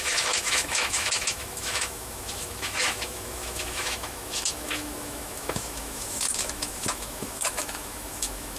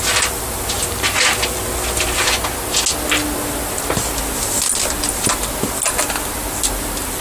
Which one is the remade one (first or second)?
first